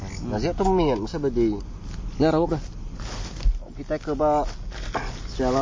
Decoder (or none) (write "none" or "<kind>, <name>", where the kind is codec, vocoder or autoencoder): none